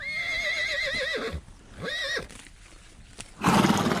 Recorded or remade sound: recorded